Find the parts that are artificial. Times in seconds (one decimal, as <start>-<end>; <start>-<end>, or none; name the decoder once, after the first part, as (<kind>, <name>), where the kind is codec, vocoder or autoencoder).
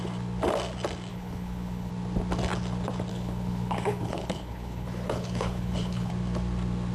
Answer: 1.1-1.9 (codec, HILCodec); 3.1-6.1